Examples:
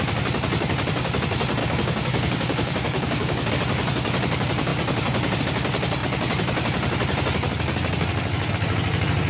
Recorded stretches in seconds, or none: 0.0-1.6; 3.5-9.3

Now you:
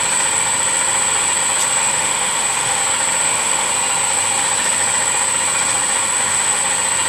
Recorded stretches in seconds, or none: 0.0-1.8; 2.8-3.2; 3.7-6.1; 6.6-7.1

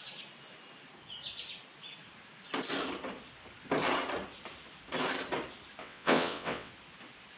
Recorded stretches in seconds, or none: 0.0-5.8; 6.7-7.4

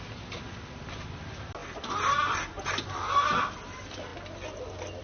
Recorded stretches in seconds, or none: 0.0-5.0

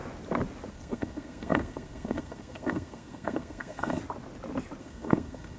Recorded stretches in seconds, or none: 0.0-0.7; 4.0-4.8

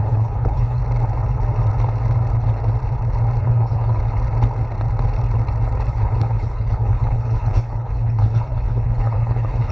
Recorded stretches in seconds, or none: 0.8-3.4; 4.0-5.9